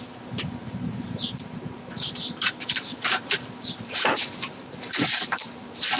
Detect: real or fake fake